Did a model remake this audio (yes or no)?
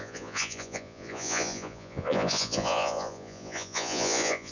yes